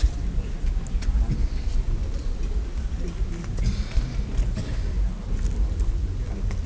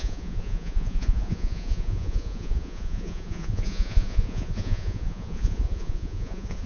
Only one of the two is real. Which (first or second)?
first